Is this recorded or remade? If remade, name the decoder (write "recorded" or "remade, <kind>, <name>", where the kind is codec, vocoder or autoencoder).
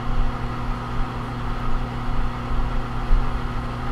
recorded